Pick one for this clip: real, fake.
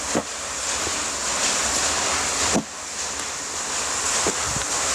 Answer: real